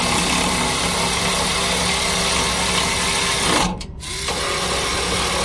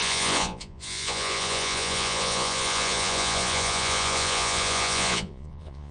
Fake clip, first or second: second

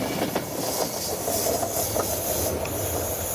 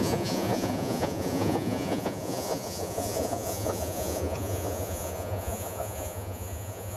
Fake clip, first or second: second